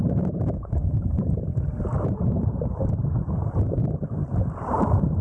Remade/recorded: remade